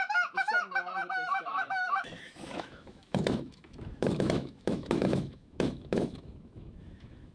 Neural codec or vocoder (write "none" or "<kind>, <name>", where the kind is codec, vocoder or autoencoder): autoencoder, DAC-VAE